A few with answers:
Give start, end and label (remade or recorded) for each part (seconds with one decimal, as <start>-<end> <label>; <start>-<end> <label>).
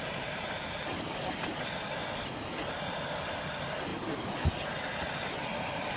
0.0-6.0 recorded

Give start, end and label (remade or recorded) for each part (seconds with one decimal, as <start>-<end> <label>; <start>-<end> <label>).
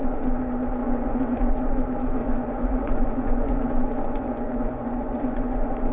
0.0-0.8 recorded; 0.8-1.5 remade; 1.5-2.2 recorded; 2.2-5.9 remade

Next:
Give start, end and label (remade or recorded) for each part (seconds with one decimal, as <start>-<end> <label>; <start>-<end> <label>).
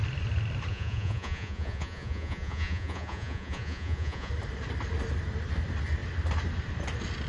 0.0-0.7 recorded; 0.7-4.3 remade; 4.3-7.3 recorded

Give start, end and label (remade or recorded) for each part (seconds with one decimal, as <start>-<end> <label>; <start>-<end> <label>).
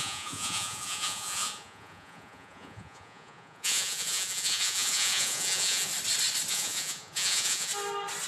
0.0-5.9 remade; 5.9-6.5 recorded; 6.5-7.7 remade; 7.7-8.3 recorded